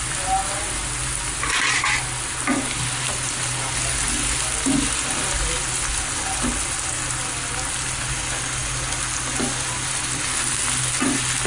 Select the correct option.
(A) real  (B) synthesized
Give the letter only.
A